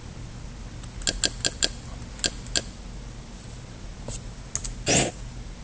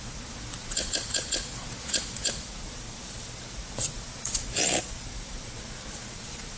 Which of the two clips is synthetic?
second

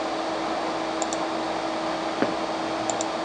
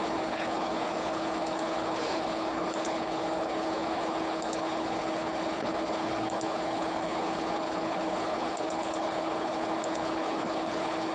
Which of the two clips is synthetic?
second